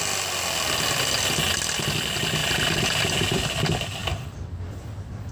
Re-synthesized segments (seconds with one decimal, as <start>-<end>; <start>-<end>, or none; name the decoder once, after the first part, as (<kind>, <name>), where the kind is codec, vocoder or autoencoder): 4.0-5.3 (vocoder, BigVGAN v2)